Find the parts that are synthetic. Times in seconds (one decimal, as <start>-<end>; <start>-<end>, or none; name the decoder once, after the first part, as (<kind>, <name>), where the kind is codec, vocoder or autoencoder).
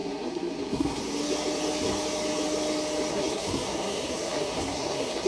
0.0-1.0 (codec, SNAC); 3.1-5.3